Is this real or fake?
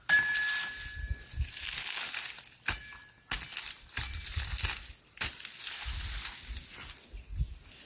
real